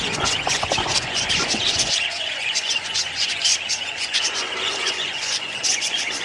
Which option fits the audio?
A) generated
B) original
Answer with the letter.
A